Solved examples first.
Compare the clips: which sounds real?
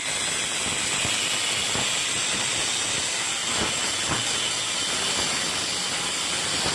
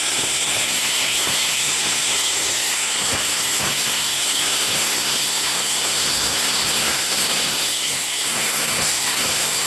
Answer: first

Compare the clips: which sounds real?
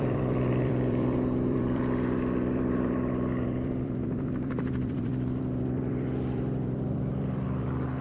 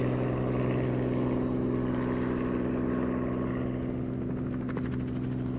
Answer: second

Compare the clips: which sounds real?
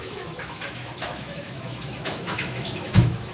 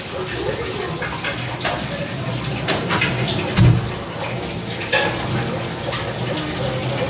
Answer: second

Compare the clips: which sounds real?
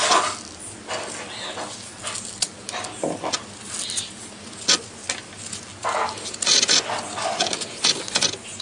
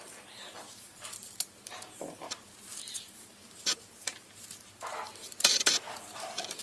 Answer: first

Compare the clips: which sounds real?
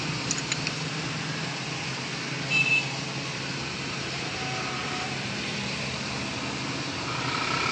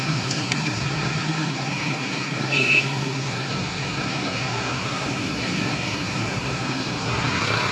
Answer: first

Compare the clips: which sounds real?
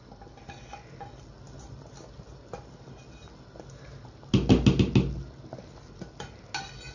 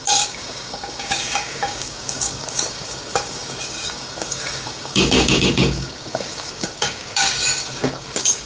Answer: first